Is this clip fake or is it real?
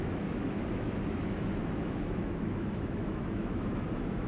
fake